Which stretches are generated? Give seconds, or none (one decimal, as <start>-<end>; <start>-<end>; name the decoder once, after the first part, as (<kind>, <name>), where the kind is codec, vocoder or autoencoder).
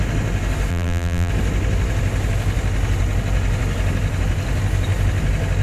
0.7-1.3 (vocoder, BigVGAN v2)